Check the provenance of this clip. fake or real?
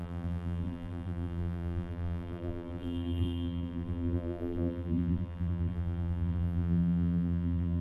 fake